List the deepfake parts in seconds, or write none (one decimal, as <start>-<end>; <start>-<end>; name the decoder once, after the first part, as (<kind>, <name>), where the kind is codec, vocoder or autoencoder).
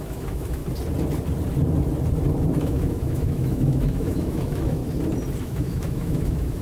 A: 0.0-0.6 (autoencoder, DAC-VAE); 2.6-4.8; 5.4-6.6